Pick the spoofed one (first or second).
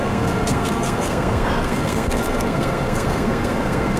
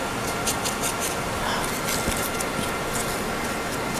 first